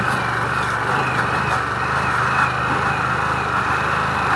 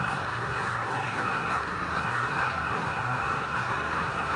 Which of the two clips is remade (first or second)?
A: second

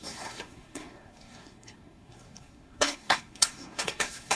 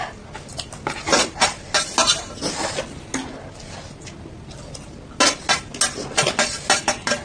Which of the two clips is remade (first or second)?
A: first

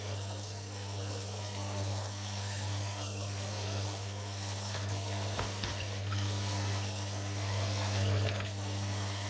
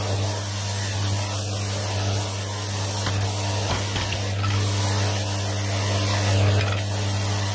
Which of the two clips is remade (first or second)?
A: first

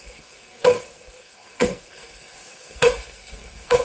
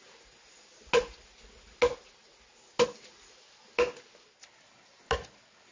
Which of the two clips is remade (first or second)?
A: first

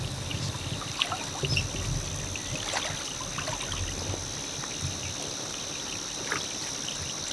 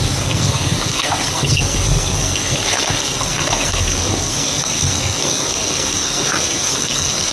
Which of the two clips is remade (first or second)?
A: second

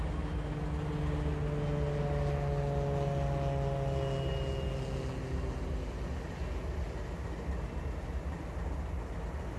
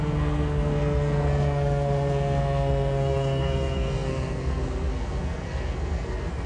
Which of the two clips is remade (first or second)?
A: second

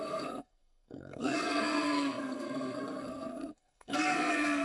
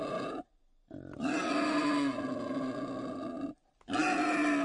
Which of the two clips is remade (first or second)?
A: first